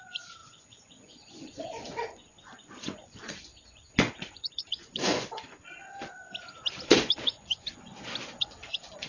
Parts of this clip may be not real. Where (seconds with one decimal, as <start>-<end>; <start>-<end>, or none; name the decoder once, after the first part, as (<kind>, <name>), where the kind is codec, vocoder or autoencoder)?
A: 0.0-5.8 (vocoder, Vocos); 6.9-7.9; 8.4-9.1